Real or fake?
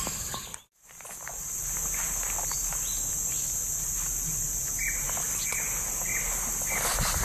real